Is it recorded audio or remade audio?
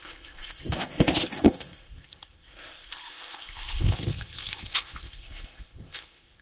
remade